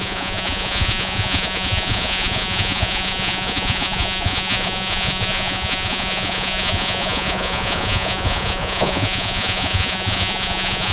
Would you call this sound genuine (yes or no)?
no